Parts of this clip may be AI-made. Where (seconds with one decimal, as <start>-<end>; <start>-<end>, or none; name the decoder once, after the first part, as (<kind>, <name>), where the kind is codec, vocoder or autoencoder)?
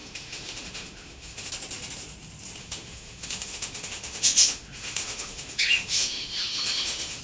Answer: 0.0-1.5 (autoencoder, DAC-VAE); 2.6-7.2